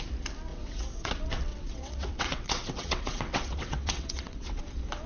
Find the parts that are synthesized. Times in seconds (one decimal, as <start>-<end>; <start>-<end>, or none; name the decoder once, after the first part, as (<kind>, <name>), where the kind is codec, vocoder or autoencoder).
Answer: 0.5-1.1 (vocoder, WaveNeXt); 1.5-4.6

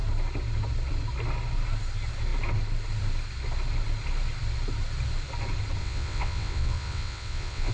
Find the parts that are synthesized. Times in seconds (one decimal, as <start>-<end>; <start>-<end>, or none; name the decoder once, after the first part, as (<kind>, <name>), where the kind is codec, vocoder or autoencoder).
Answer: 5.8-7.7 (vocoder, WaveNeXt)

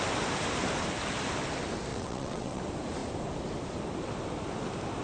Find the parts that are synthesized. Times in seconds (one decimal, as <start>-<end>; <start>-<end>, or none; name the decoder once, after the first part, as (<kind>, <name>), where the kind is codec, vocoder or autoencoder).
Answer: 1.9-2.6 (vocoder, WaveNeXt)

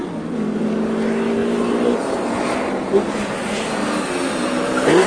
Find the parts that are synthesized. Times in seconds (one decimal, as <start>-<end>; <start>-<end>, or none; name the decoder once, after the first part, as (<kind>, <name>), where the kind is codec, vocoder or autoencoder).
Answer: none

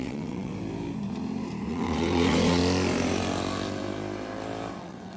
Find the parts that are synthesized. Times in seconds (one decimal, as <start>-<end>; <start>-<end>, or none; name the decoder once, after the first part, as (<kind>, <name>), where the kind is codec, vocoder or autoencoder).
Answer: 0.0-0.5 (vocoder, WaveNeXt); 1.7-2.6; 4.8-5.2

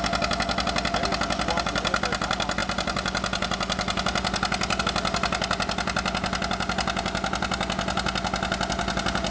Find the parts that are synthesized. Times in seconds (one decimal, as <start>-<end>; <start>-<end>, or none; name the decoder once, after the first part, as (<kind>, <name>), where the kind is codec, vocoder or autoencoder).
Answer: none